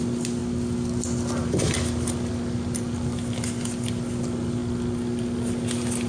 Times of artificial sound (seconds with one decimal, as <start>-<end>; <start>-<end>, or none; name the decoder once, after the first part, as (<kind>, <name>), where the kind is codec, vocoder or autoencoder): none

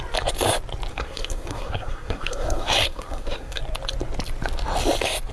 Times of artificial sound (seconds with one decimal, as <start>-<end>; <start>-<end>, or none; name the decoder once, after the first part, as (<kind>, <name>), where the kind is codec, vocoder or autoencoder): 0.9-3.6 (codec, SNAC)

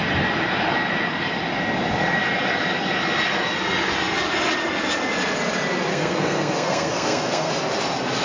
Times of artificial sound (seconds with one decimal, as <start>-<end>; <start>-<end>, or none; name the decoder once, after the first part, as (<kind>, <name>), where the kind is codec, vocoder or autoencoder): 5.9-7.5 (codec, SNAC)

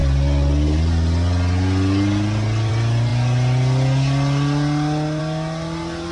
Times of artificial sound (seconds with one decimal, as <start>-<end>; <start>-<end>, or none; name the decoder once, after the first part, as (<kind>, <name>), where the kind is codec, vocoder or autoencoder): none

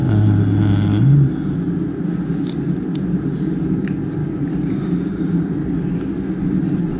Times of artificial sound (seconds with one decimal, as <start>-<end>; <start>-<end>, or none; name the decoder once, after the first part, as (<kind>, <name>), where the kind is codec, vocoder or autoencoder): none

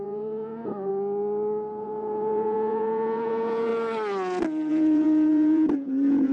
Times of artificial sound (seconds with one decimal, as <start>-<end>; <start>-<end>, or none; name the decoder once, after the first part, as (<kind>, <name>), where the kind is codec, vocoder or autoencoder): 0.0-0.9 (vocoder, Vocos); 1.8-3.7; 4.7-6.3